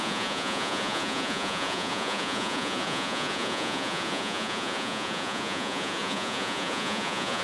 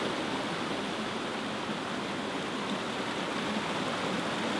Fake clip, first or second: first